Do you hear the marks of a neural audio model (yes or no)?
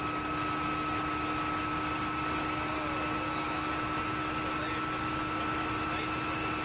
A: no